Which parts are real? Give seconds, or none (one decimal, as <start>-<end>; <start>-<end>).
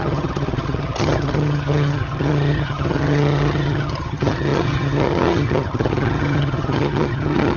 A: none